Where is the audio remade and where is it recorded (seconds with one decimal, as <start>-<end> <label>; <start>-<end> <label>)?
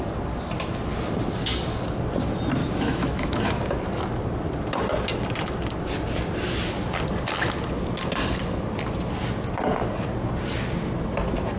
0.0-2.6 recorded; 2.6-3.5 remade; 3.5-11.6 recorded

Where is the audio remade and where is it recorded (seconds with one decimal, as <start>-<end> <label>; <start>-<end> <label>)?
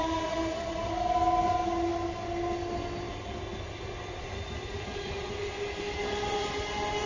0.0-7.1 recorded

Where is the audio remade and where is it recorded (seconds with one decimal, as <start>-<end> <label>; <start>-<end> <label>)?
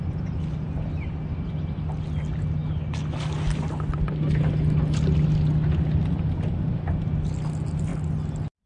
0.0-8.7 recorded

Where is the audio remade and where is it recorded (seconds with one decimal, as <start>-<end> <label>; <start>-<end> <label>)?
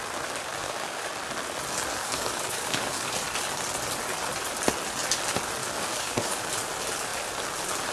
0.0-0.6 recorded; 0.6-1.1 remade; 1.1-2.0 recorded; 2.0-3.1 remade; 3.1-5.6 recorded; 5.6-6.4 remade; 6.4-7.9 recorded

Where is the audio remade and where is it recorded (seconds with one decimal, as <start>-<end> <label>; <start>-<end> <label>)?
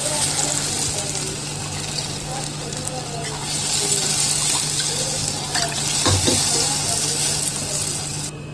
0.0-8.5 recorded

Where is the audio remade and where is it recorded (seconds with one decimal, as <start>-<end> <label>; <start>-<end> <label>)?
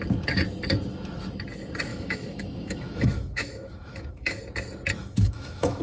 0.0-1.9 recorded; 1.9-4.4 remade; 4.4-5.0 recorded; 5.0-5.8 remade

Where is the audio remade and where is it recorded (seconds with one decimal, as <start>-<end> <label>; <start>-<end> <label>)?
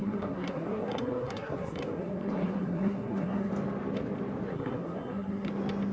0.0-3.5 remade; 3.5-4.5 recorded; 4.5-5.5 remade; 5.5-5.9 recorded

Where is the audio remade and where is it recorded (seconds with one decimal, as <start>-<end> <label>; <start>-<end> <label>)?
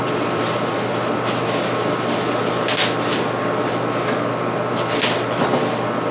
0.0-0.7 remade; 0.7-6.1 recorded